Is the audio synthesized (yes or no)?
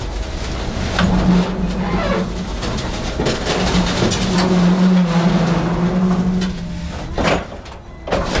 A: no